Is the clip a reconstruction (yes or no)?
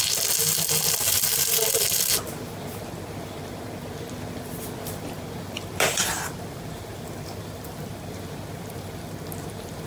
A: yes